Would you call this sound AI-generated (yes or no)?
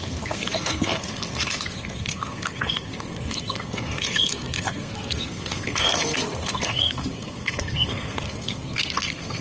yes